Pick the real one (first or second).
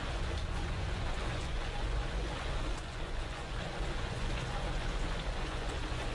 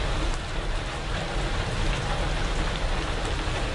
second